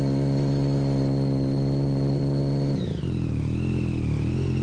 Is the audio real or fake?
real